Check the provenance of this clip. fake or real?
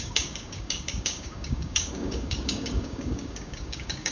fake